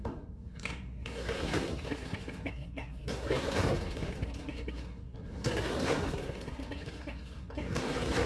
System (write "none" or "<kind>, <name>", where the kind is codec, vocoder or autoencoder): codec, SNAC